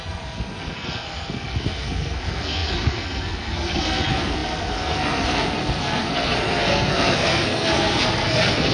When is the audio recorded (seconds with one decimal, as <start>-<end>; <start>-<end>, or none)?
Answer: none